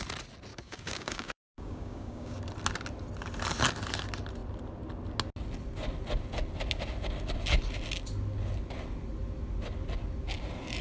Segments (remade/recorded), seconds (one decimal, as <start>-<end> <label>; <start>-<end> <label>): 0.0-0.5 recorded; 0.5-2.4 remade; 2.4-10.8 recorded